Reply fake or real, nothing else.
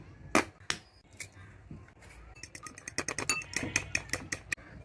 real